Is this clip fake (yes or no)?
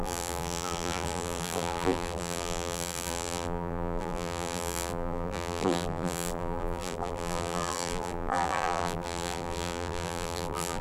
yes